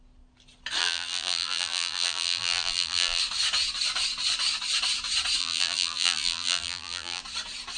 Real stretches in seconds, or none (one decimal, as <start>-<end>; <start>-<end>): 0.0-0.8; 3.2-5.4; 7.2-7.8